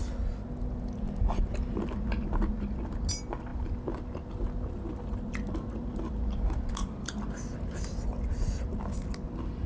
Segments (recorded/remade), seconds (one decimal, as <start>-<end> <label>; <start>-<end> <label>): 0.0-9.7 recorded